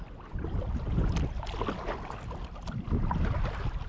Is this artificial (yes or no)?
no